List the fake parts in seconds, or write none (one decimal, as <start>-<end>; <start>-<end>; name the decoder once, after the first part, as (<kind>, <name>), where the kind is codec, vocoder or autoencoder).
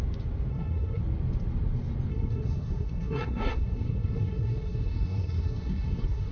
0.5-1.0 (codec, SNAC); 2.1-6.3